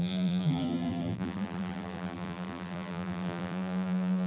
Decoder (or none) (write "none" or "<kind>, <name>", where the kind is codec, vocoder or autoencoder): vocoder, BigVGAN v2